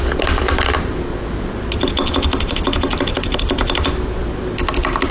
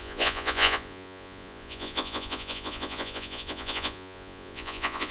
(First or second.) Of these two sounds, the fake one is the second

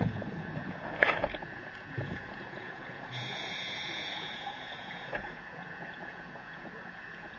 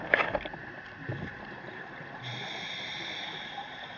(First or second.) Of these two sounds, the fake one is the first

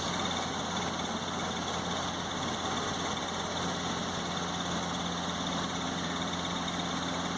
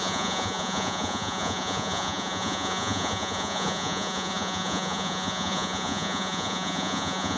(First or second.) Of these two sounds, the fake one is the second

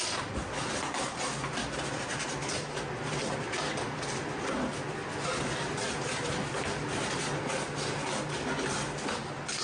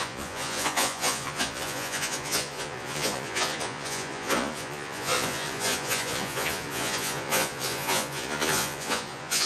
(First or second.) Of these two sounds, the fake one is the second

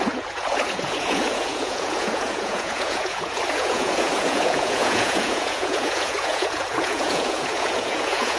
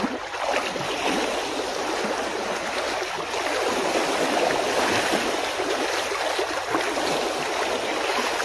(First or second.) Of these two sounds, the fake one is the first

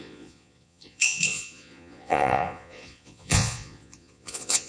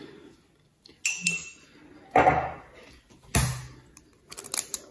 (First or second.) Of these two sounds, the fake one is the first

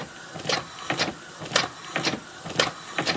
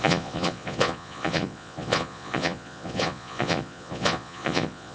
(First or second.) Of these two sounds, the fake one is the second